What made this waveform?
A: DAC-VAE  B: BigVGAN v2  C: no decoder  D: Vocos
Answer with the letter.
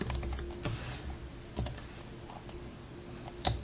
C